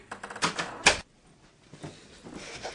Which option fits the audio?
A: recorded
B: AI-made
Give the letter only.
A